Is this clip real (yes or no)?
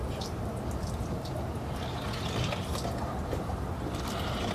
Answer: yes